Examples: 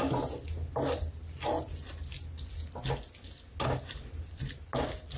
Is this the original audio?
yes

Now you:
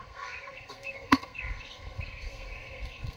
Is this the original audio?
no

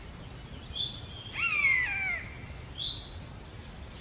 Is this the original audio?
yes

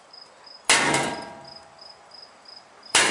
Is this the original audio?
yes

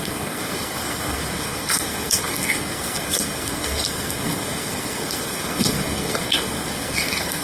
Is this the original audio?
no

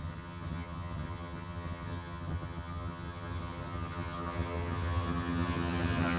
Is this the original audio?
no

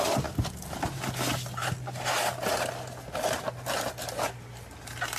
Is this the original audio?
yes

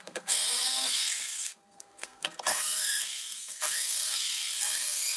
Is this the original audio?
no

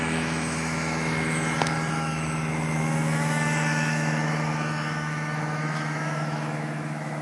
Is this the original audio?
no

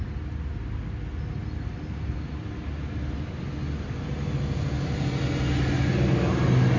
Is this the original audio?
yes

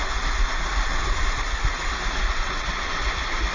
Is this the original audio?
yes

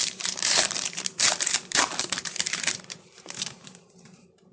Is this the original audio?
no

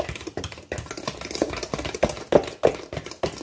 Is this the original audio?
yes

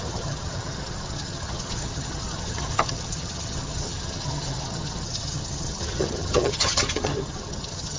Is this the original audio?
no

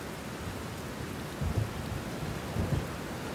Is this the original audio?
yes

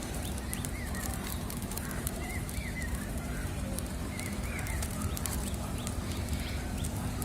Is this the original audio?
no